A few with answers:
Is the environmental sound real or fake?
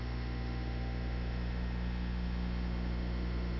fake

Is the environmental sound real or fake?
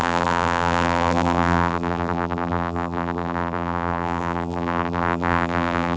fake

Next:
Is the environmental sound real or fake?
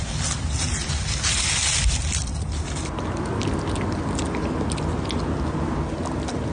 real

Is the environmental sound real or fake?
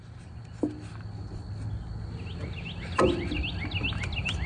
real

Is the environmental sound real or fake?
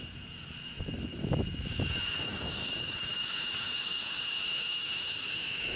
fake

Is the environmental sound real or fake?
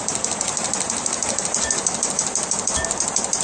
fake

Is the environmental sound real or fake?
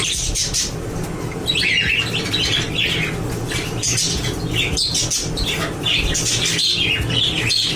real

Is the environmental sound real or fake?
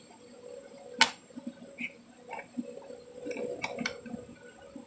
real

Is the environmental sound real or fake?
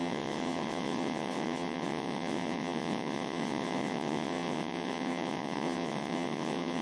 fake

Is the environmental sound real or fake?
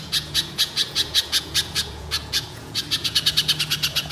fake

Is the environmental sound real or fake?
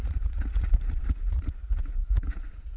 fake